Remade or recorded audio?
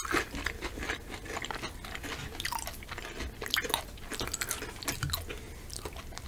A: recorded